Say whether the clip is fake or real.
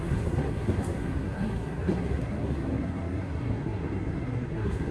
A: fake